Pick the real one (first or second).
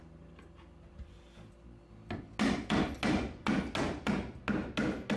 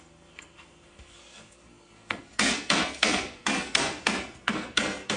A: first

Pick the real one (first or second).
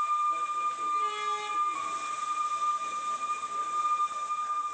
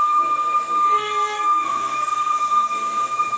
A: first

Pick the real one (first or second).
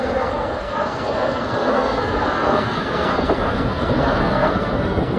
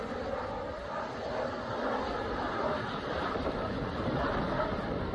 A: second